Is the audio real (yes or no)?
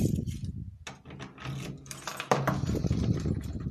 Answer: yes